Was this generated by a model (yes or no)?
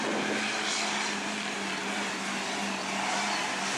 no